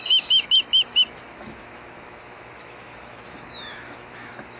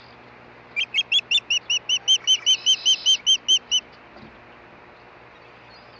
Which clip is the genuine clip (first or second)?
second